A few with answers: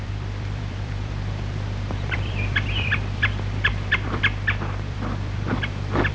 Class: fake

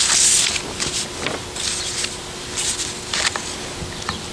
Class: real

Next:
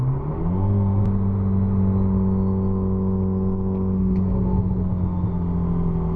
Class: real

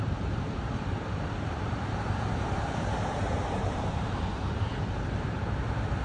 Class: fake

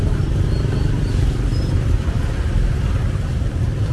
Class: fake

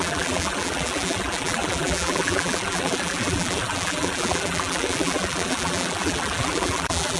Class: fake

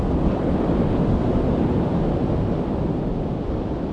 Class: real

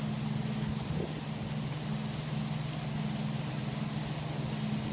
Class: real